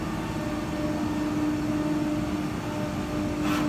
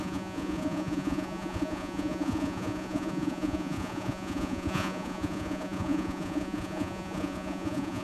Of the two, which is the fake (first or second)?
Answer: second